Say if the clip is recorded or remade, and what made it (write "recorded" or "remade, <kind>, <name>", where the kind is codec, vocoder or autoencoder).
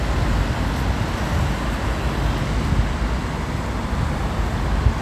recorded